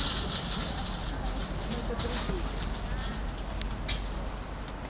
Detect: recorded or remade recorded